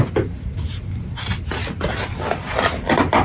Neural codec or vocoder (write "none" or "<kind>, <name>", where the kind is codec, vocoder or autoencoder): none